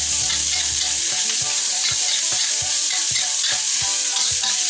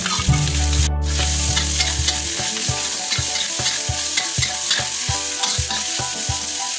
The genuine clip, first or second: second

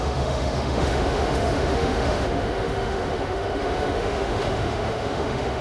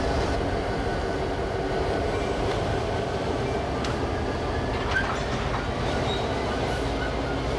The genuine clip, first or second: second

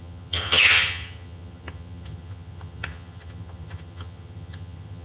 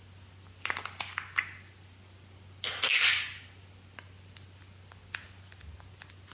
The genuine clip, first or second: second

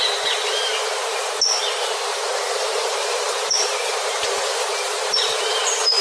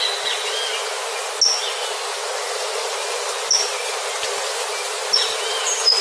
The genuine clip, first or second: second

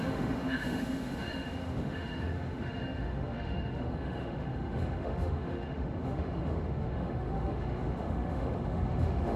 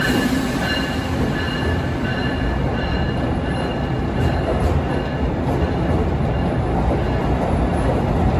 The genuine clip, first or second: second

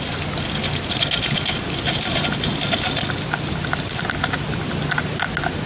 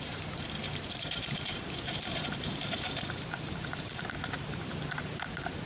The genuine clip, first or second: first